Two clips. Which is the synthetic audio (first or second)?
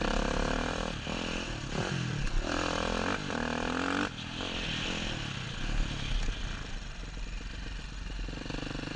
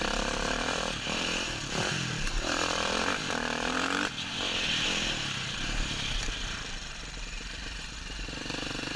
second